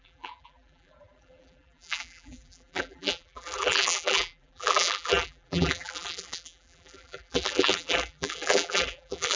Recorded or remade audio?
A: remade